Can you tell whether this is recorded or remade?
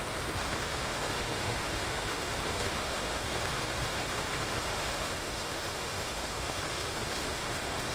remade